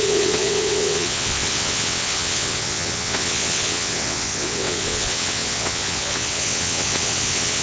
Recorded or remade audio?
remade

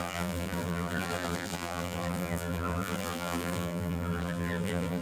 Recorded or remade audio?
remade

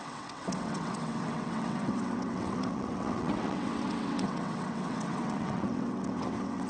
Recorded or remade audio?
remade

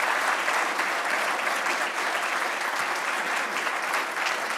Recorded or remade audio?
recorded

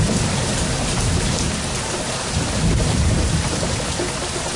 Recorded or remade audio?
recorded